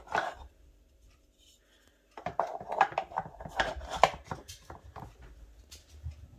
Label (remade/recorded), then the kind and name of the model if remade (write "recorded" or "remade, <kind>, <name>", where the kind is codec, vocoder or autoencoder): recorded